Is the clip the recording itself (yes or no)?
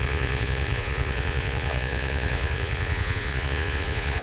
no